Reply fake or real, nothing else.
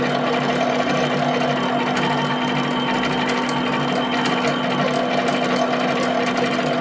real